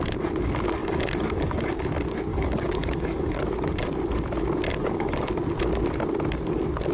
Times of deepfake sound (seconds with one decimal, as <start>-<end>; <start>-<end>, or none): 0.8-1.8; 2.3-3.4; 4.7-5.3